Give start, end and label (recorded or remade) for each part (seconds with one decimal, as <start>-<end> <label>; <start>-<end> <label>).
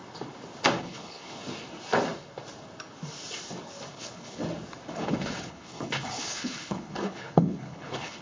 0.0-0.8 recorded; 0.8-1.4 remade; 1.4-3.9 recorded; 3.9-4.4 remade; 4.4-4.9 recorded; 4.9-8.2 remade